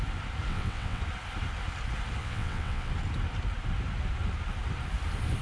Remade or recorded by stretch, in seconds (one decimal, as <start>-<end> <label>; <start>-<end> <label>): 0.0-0.5 recorded; 0.5-1.0 remade; 1.0-2.2 recorded; 2.2-2.9 remade; 2.9-5.4 recorded